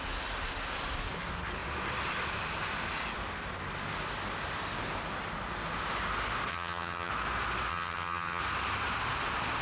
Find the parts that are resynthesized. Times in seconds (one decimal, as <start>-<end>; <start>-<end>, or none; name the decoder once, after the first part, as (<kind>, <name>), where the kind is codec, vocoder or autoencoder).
6.5-7.1 (vocoder, HiFi-GAN); 7.7-8.4